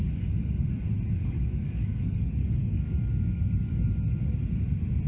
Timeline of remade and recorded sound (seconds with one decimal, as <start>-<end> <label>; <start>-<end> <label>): 0.0-1.2 recorded; 1.2-3.9 remade; 3.9-5.1 recorded